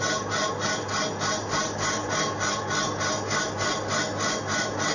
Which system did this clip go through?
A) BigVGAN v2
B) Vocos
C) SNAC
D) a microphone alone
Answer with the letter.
D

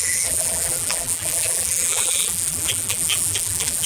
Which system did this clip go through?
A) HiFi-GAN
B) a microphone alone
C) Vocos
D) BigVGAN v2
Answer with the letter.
D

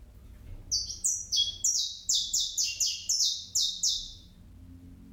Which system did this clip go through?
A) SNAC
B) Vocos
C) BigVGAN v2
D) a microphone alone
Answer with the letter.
D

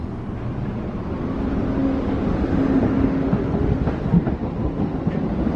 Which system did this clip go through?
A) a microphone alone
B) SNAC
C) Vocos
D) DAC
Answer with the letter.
A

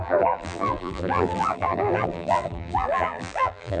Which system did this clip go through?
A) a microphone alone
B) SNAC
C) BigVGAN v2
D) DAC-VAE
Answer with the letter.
C